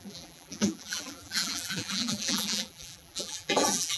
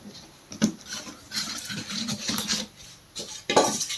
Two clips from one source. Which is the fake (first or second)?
first